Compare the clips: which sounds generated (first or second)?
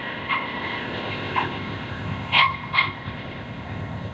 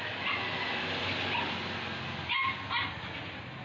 first